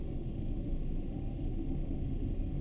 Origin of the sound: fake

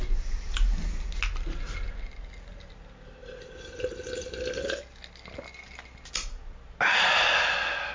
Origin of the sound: real